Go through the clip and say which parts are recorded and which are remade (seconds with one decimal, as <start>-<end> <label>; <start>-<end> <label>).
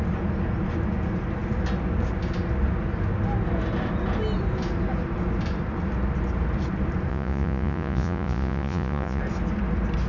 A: 0.0-7.1 recorded; 7.1-9.2 remade; 9.2-10.1 recorded